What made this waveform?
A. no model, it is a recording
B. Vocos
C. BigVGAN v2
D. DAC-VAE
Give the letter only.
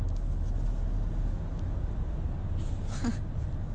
A